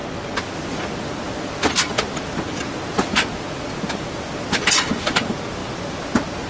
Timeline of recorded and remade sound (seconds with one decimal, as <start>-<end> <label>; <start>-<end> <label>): 0.0-6.5 recorded